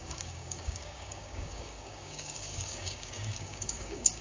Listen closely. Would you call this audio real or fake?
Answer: fake